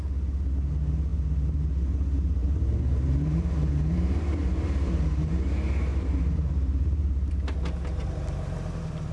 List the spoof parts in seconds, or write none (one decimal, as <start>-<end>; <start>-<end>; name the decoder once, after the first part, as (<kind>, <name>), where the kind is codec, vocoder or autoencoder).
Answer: 1.1-1.6 (vocoder, BigVGAN v2); 2.4-5.3; 5.9-7.3